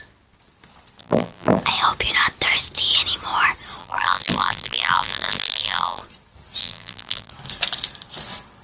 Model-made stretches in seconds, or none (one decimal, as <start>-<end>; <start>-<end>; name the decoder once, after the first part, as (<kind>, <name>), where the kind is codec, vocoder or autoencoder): 1.0-1.6 (vocoder, BigVGAN v2); 3.8-6.0; 6.6-7.3